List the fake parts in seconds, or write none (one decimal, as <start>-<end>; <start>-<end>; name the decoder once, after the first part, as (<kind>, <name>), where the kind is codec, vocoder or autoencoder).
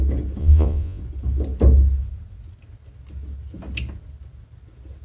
0.4-1.0 (vocoder, Vocos)